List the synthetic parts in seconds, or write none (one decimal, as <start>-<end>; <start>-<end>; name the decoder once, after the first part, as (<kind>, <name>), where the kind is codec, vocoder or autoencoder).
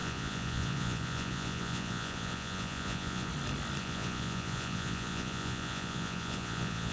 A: 0.0-3.3 (vocoder, Vocos); 3.8-6.9